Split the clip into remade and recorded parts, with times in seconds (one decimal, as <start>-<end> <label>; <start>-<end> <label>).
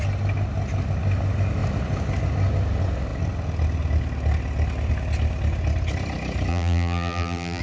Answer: 0.0-6.5 recorded; 6.5-7.6 remade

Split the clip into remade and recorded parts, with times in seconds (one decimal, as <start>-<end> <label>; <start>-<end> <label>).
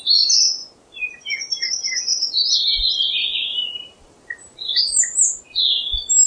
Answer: 0.0-0.6 recorded; 0.6-1.7 remade; 1.7-2.1 recorded; 2.1-2.9 remade; 2.9-3.5 recorded; 3.5-4.8 remade; 4.8-6.3 recorded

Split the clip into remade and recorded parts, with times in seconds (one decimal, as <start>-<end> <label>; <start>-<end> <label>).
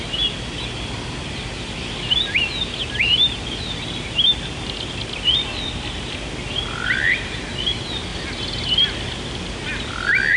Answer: 0.0-8.1 remade; 8.1-10.4 recorded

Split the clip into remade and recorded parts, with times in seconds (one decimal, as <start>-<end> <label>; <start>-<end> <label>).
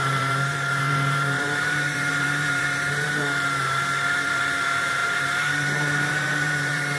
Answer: 0.0-7.0 remade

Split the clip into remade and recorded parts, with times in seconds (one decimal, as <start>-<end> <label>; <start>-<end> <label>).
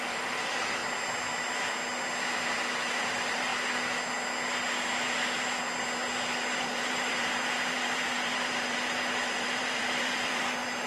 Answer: 0.0-0.8 remade; 0.8-2.6 recorded; 2.6-3.5 remade; 3.5-6.6 recorded; 6.6-10.9 remade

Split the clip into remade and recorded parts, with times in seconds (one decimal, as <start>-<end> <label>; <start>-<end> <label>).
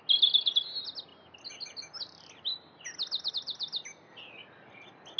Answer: 0.0-5.2 recorded